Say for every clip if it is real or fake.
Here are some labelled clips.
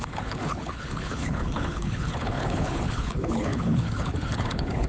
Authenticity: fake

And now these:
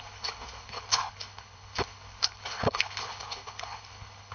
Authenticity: fake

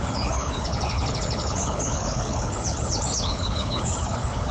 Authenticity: fake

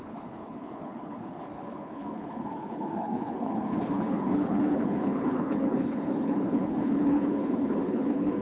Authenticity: fake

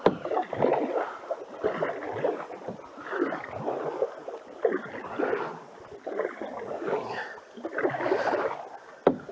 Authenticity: real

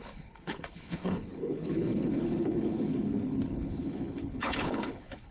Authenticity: fake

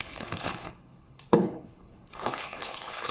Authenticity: fake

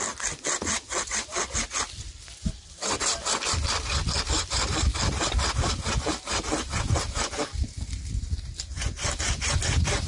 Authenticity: real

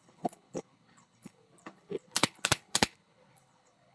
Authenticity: fake